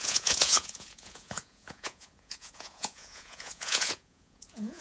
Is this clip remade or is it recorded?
remade